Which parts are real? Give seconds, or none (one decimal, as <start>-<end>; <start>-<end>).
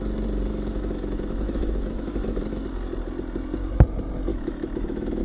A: 0.0-0.5; 2.4-4.3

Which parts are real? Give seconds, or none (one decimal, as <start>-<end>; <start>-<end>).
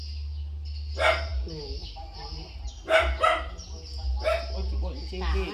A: 0.0-5.5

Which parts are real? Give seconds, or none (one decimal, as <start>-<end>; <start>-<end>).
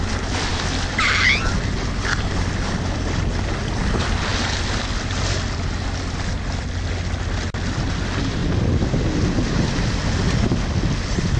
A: 0.0-11.4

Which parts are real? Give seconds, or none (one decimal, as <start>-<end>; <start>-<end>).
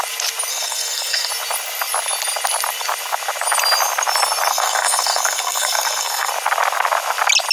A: 0.0-0.5; 1.3-4.5; 6.3-7.5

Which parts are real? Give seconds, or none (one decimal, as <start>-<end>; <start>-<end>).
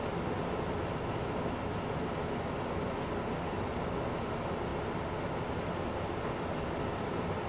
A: 0.0-7.5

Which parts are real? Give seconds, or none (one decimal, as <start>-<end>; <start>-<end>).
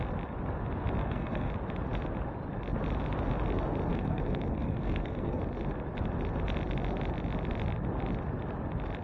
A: 0.0-1.0; 1.5-3.9; 5.4-9.0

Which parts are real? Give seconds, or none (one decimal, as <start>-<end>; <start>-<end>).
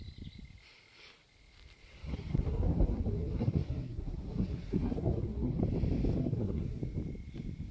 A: 0.0-1.9; 5.6-6.2; 6.8-7.7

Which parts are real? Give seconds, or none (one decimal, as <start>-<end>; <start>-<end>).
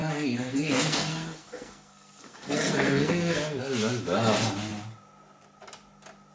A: 3.6-6.3